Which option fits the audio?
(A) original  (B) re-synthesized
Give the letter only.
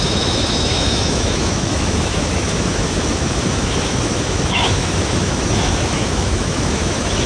B